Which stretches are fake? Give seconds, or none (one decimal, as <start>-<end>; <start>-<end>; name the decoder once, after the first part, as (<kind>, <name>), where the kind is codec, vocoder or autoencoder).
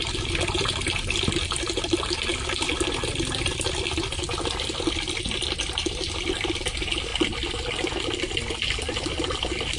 none